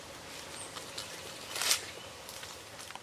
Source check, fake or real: real